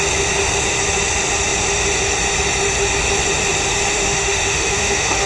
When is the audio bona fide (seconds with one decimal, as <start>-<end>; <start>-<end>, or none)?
0.0-3.9